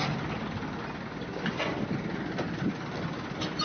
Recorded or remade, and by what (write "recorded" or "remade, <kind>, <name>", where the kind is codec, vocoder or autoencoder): recorded